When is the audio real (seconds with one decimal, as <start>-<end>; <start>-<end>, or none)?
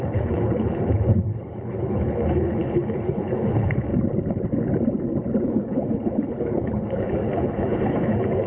3.9-5.4